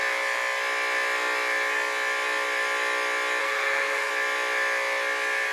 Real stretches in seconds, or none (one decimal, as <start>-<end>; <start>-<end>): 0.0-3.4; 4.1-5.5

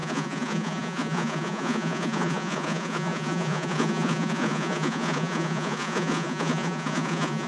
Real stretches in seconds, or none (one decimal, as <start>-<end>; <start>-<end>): none

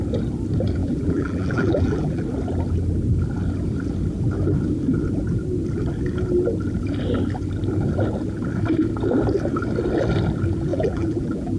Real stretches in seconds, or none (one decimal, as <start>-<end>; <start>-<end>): 0.0-0.8; 2.2-10.7